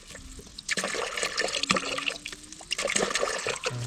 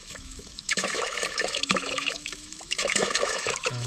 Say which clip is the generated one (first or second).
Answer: second